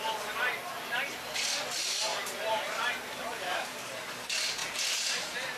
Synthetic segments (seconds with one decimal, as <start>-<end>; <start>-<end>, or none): 2.1-2.9; 3.3-3.9; 4.6-5.6